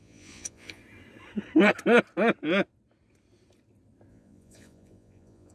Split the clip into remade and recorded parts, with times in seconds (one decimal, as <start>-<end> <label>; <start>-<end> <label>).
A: 0.0-0.8 remade; 0.8-4.1 recorded; 4.1-5.5 remade